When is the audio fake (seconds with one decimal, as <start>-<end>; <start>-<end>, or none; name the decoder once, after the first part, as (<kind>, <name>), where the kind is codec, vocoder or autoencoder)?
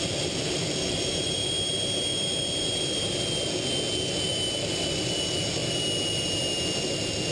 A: none